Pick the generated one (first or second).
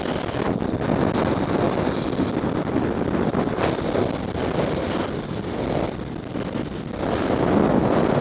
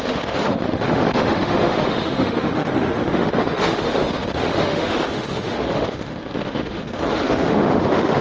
second